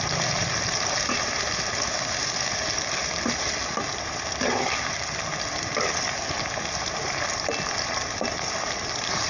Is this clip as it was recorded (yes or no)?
yes